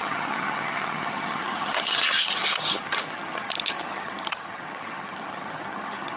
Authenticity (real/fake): fake